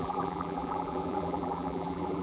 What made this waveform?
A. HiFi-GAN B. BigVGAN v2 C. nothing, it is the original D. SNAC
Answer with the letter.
B